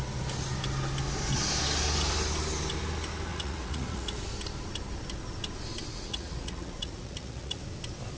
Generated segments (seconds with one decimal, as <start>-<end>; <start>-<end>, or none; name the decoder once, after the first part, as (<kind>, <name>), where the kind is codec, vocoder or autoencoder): 3.3-4.2 (vocoder, Vocos); 5.9-7.6